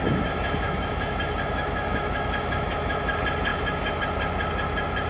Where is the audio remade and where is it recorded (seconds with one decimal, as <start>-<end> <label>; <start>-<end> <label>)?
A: 0.0-3.1 remade; 3.1-3.5 recorded; 3.5-4.0 remade; 4.0-5.1 recorded